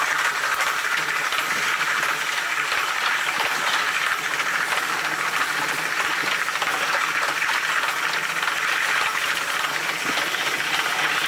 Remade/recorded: recorded